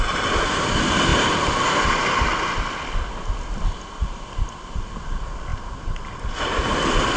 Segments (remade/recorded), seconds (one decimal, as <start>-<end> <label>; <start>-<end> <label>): 0.0-7.2 recorded